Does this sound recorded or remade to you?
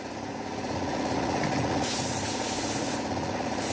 remade